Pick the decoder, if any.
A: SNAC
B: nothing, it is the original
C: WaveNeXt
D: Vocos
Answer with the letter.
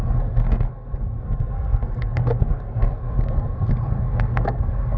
A